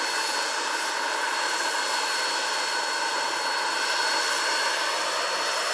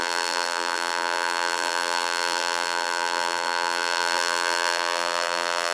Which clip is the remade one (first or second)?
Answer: second